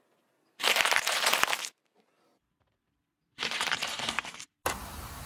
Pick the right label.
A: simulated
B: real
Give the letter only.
A